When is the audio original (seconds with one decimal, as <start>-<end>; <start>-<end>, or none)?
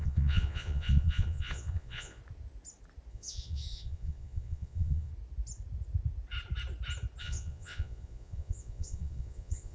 2.2-3.1; 5.1-7.2